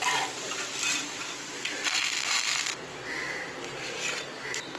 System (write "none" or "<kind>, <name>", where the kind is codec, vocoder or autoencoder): none